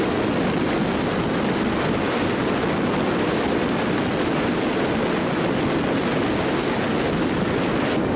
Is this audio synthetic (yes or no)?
no